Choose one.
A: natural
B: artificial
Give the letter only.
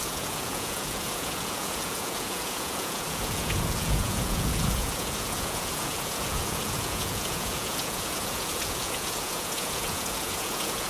B